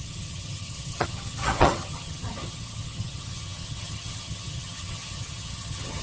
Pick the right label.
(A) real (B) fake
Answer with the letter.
B